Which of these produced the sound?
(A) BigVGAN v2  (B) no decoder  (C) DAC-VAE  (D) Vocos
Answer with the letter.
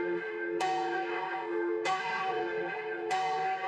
C